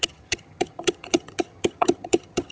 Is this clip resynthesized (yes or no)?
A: yes